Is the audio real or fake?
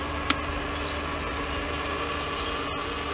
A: real